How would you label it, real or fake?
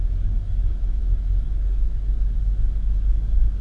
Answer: fake